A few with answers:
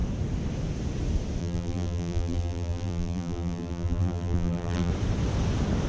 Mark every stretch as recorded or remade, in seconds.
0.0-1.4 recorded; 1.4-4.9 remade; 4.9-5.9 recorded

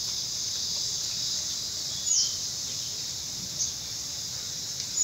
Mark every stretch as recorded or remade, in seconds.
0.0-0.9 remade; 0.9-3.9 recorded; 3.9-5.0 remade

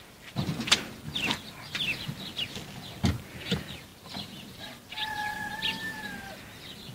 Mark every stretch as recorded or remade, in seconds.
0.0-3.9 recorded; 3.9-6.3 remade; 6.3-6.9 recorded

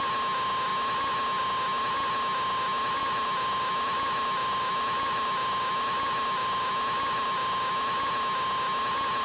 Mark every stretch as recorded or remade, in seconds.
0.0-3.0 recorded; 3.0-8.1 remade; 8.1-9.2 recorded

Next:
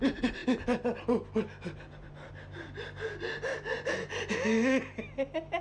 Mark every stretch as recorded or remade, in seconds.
0.0-5.6 recorded

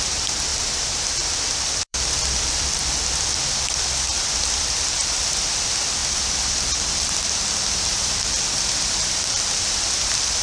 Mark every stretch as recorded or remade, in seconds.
0.0-0.5 remade; 0.5-1.4 recorded; 1.4-2.8 remade; 2.8-3.6 recorded; 3.6-10.4 remade